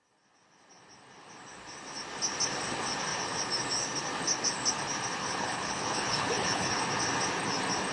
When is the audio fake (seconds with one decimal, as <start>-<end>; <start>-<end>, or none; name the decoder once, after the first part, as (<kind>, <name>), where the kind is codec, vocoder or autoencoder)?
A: 5.2-6.7 (codec, HILCodec)